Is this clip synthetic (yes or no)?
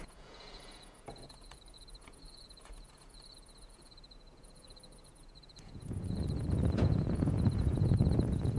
yes